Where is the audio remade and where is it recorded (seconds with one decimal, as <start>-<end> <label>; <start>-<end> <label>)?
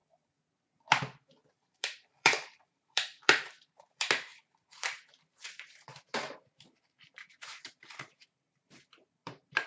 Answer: 0.0-1.5 recorded; 1.5-9.7 remade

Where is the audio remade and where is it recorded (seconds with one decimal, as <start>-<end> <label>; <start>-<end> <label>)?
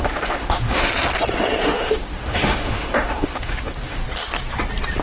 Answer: 0.0-0.9 remade; 0.9-1.6 recorded; 1.6-4.0 remade; 4.0-5.0 recorded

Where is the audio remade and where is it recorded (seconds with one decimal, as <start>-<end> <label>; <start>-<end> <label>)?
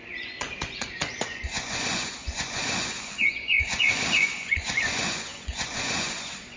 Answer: 0.0-6.6 remade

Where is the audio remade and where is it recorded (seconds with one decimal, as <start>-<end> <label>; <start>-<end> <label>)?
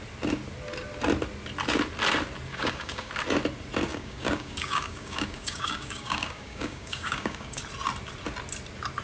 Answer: 0.0-2.5 recorded; 2.5-3.1 remade; 3.1-3.9 recorded; 3.9-7.6 remade; 7.6-9.0 recorded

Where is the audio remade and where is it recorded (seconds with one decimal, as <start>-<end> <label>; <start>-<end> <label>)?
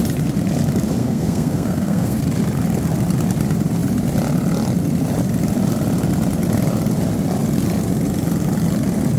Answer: 0.0-1.0 recorded; 1.0-2.2 remade; 2.2-9.2 recorded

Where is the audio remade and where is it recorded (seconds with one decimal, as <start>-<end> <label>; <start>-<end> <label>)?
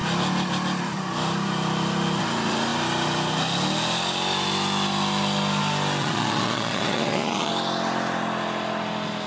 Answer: 0.0-6.0 recorded; 6.0-7.5 remade; 7.5-9.3 recorded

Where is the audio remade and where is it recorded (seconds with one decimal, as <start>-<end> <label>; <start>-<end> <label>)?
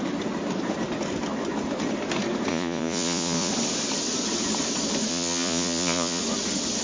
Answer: 0.0-2.5 recorded; 2.5-3.5 remade; 3.5-5.1 recorded; 5.1-6.2 remade; 6.2-6.8 recorded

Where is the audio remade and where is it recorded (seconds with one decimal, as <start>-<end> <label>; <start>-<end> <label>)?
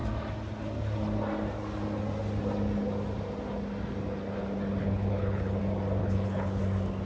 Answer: 0.0-4.8 recorded; 4.8-5.6 remade; 5.6-6.0 recorded; 6.0-6.6 remade; 6.6-7.1 recorded